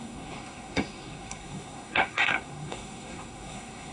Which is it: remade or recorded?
remade